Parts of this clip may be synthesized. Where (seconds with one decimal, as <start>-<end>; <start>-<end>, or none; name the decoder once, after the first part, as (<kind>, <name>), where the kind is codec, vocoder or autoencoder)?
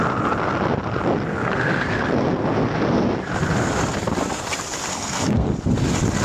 1.3-2.0 (codec, SNAC); 4.9-5.5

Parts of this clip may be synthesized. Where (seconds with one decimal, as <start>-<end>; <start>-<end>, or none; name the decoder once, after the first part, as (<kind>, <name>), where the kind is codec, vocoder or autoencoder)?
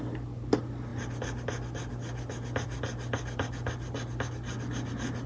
none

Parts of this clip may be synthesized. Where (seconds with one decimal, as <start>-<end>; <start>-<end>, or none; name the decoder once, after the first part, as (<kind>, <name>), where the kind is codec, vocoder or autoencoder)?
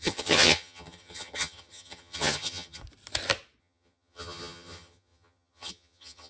0.0-2.8 (vocoder, HiFi-GAN); 3.6-6.3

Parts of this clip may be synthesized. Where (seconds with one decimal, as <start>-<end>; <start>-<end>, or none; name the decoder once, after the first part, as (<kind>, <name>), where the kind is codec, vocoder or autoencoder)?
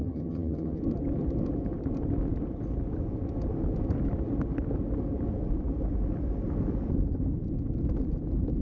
0.0-0.8 (vocoder, HiFi-GAN)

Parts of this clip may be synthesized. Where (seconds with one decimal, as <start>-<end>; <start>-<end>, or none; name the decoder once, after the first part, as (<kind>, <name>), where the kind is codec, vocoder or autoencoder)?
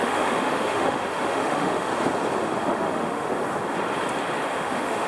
0.0-1.9 (autoencoder, DAC-VAE); 2.6-3.3; 4.5-5.1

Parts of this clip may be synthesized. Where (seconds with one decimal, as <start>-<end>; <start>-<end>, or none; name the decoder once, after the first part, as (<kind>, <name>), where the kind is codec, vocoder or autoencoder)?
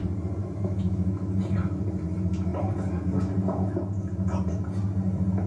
0.4-1.3 (autoencoder, DAC-VAE)